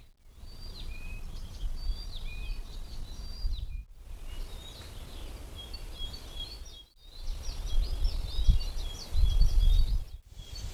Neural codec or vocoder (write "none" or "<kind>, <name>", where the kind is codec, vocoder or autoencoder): none